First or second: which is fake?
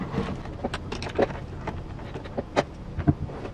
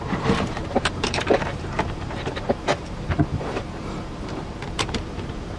second